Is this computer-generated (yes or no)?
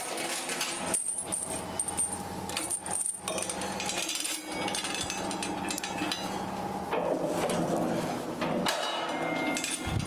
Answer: no